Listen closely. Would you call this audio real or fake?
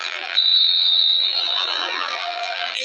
fake